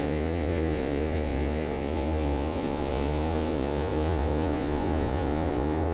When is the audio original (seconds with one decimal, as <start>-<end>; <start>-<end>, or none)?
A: none